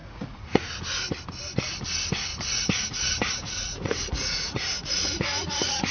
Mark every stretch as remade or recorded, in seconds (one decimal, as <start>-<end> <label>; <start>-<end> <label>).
0.0-0.8 remade; 0.8-2.3 recorded; 2.3-5.9 remade